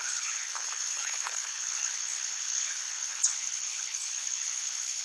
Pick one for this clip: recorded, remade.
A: remade